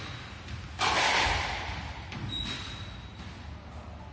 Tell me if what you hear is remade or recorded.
recorded